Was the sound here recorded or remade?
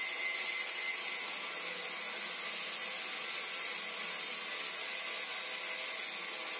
recorded